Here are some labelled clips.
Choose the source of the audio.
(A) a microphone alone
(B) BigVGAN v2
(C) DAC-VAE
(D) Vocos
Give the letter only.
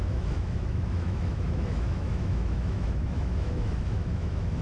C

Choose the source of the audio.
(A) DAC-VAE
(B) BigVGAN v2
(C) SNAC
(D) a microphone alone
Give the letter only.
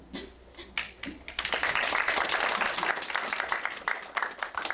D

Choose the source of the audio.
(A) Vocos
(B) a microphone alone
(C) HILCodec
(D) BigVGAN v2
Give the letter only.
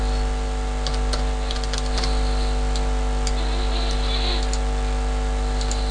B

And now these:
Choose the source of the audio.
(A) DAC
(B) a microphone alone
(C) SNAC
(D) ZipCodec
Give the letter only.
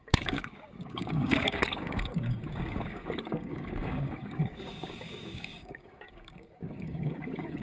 A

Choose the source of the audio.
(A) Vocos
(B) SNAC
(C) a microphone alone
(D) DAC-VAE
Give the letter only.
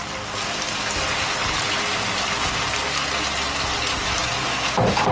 C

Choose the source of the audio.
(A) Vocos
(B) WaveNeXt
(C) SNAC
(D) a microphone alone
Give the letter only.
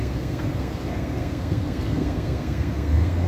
C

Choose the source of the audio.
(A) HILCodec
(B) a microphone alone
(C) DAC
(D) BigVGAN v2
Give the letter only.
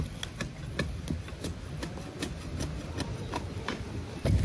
B